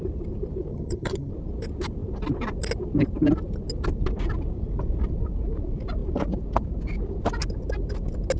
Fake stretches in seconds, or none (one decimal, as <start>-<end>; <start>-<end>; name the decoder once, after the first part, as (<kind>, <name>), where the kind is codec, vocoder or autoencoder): 0.7-1.3 (vocoder, HiFi-GAN)